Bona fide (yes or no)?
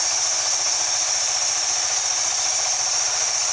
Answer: yes